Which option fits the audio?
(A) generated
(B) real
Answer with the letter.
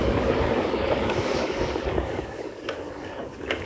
A